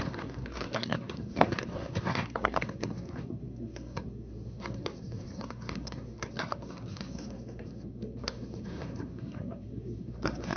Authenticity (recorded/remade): remade